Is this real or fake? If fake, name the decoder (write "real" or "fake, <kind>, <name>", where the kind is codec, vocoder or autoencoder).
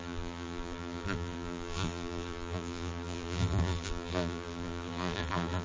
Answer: fake, vocoder, BigVGAN v2